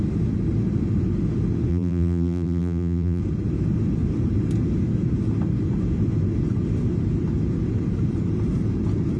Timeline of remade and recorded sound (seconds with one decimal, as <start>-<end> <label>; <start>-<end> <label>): 0.0-1.7 recorded; 1.7-3.2 remade; 3.2-9.2 recorded